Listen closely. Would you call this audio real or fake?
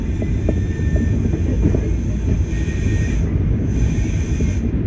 real